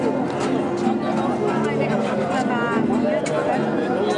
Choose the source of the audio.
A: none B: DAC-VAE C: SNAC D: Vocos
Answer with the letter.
A